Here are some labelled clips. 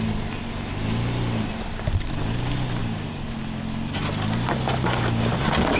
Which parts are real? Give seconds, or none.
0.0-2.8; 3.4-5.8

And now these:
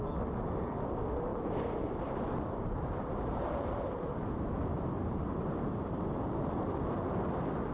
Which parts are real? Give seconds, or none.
0.0-1.3; 4.1-5.0; 6.0-7.7

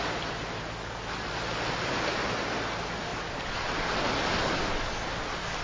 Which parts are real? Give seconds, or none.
0.0-5.6

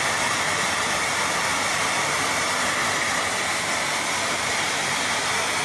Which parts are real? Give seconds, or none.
0.0-1.5; 2.4-3.5; 4.2-5.6

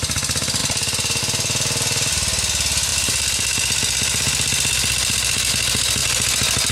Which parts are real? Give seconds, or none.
0.0-2.9; 5.5-6.7

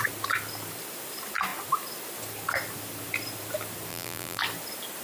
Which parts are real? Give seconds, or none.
0.0-3.9; 4.4-5.0

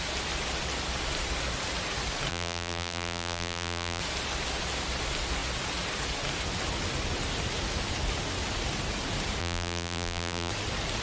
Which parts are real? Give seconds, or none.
0.0-2.3; 4.0-9.4; 10.5-11.0

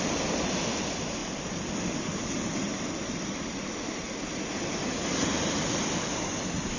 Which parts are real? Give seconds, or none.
0.0-1.2; 4.2-6.8